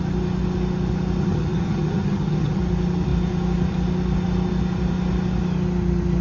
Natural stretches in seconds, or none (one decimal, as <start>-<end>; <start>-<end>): 0.0-1.2; 2.6-6.2